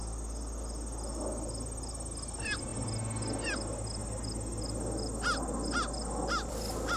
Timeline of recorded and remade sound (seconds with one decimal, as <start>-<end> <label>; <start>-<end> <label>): 0.0-7.0 recorded